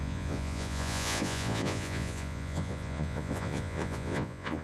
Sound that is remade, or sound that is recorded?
remade